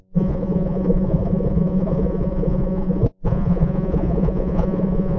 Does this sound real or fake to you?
fake